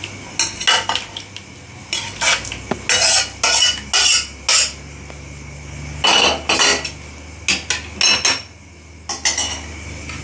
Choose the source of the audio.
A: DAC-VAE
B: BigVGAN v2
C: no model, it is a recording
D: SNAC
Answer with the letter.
C